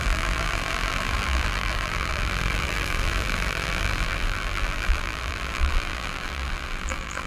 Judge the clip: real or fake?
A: fake